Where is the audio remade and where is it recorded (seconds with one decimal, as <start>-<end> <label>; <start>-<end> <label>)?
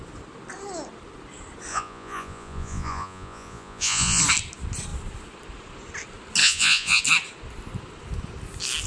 0.0-1.7 recorded; 1.7-4.2 remade; 4.2-6.4 recorded; 6.4-7.0 remade; 7.0-8.9 recorded